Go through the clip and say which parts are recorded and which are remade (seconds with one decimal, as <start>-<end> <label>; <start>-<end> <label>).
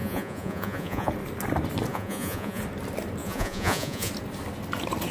0.0-1.1 remade; 1.1-1.9 recorded; 1.9-2.6 remade; 2.6-3.2 recorded; 3.2-4.1 remade; 4.1-5.1 recorded